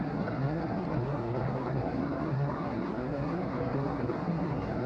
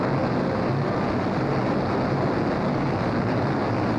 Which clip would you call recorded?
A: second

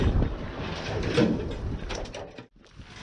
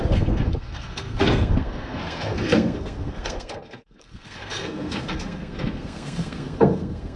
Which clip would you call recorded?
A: first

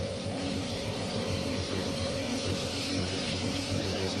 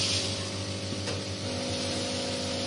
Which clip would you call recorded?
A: second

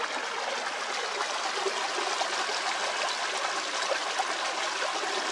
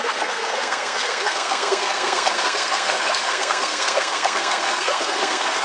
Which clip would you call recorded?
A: first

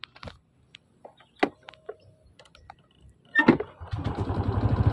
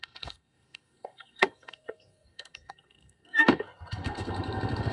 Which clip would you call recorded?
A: first